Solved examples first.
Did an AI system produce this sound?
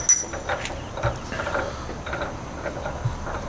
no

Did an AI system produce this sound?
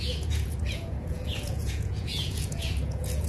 yes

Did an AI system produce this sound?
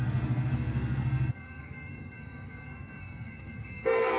yes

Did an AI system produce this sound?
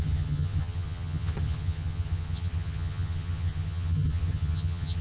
yes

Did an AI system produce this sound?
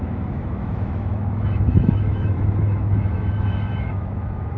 yes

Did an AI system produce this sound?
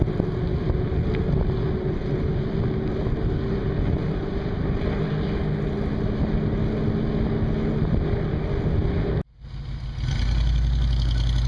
no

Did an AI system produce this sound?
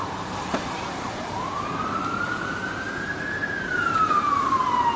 yes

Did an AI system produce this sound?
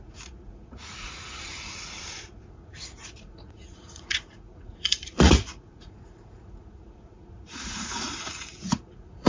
yes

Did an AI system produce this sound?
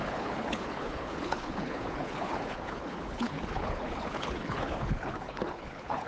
yes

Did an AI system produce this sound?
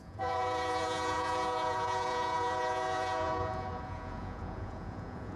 yes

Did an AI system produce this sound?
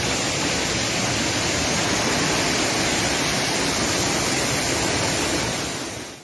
no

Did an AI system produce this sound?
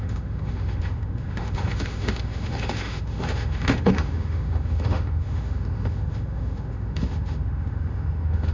yes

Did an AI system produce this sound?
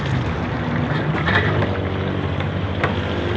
yes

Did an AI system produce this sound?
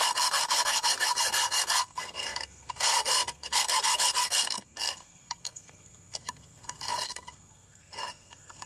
yes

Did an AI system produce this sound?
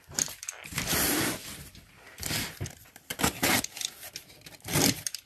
yes